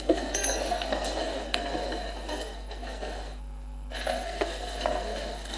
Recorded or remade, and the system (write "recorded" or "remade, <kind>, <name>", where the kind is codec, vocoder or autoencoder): remade, codec, SNAC